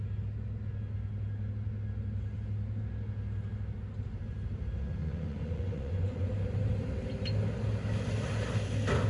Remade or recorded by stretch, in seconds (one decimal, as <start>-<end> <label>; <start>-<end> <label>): 0.0-5.0 recorded; 5.0-6.3 remade; 6.3-9.1 recorded